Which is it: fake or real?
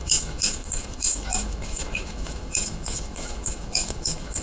fake